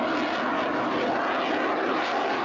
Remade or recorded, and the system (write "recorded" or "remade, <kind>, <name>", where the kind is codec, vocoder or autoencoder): recorded